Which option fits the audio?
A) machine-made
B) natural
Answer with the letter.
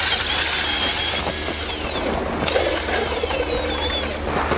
B